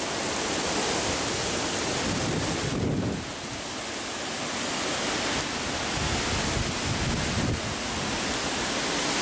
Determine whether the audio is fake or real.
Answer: real